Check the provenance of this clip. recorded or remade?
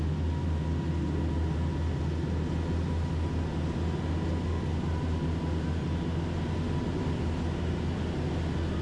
recorded